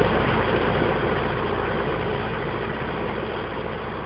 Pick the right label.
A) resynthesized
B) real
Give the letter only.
B